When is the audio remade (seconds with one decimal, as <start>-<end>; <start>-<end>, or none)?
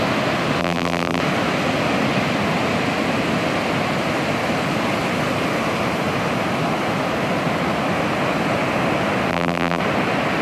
0.6-1.2; 9.3-9.8